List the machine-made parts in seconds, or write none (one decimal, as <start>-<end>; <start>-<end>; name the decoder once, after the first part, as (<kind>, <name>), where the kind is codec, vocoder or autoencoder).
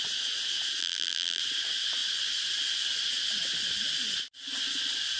0.8-1.4 (vocoder, BigVGAN v2)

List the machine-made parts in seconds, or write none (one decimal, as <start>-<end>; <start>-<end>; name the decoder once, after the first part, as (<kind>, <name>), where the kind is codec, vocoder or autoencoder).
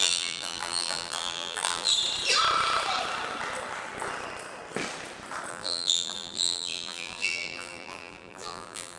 0.0-1.9 (vocoder, BigVGAN v2); 5.5-9.0